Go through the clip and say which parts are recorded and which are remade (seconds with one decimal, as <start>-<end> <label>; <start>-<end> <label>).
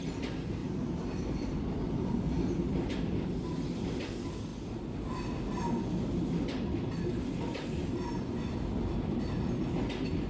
0.0-0.6 recorded; 0.6-1.3 remade; 1.3-10.3 recorded